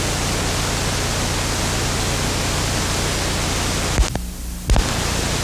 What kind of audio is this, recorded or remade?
recorded